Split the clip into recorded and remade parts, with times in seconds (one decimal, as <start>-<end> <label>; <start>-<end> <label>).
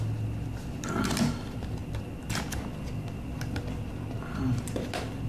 0.0-5.3 recorded